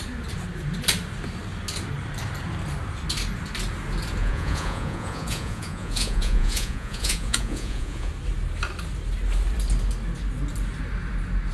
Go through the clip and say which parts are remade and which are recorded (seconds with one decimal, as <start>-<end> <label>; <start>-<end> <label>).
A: 0.0-4.2 recorded; 4.2-8.1 remade; 8.1-11.5 recorded